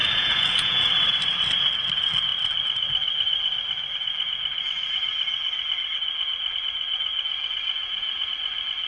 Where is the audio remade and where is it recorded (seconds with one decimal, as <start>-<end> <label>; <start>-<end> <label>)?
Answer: 0.0-0.9 remade; 0.9-7.8 recorded; 7.8-8.3 remade; 8.3-8.9 recorded